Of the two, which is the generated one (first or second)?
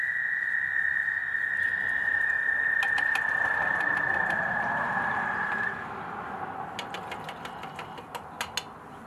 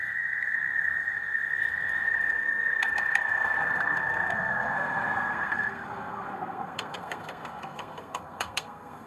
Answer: second